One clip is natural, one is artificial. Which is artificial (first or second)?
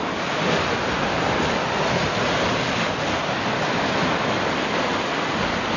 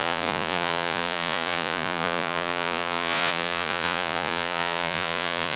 second